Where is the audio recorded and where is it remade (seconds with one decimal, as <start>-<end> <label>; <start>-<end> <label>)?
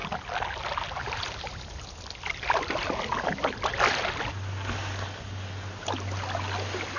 0.0-7.0 recorded